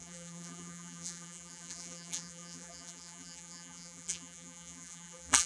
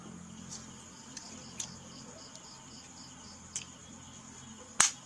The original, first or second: second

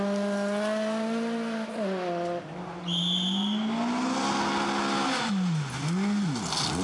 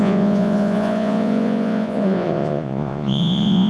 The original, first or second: first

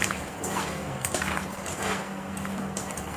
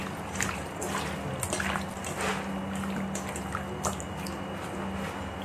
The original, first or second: second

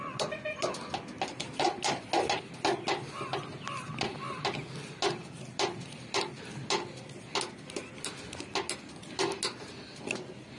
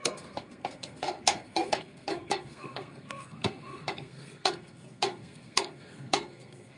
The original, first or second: first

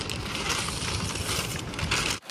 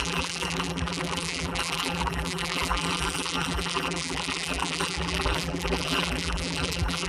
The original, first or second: first